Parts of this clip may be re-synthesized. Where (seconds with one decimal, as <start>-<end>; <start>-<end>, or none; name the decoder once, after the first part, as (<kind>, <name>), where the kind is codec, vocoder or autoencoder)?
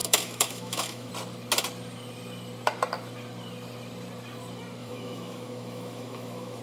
0.0-1.1 (autoencoder, DAC-VAE); 4.8-6.6